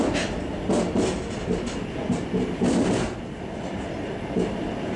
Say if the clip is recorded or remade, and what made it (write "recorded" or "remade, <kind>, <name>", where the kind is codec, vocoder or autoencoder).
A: recorded